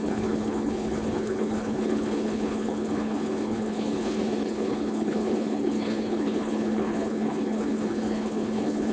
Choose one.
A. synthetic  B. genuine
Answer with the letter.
A